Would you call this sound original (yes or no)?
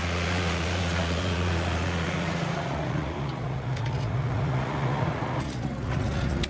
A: no